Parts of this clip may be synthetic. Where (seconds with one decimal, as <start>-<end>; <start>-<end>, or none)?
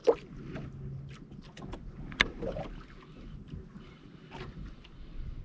none